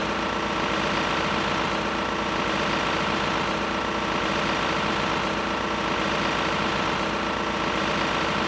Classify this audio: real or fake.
real